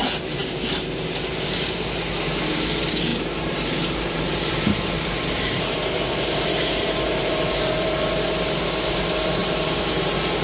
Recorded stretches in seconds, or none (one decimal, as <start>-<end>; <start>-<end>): none